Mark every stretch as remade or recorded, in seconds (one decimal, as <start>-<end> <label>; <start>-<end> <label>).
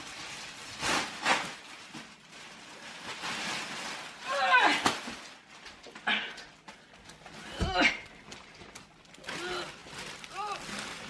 0.0-11.1 recorded